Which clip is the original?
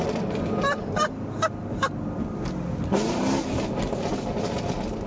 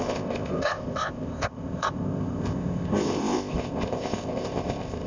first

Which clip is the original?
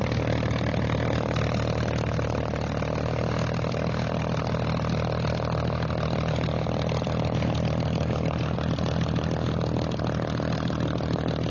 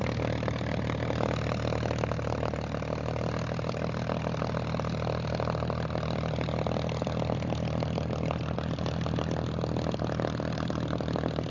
first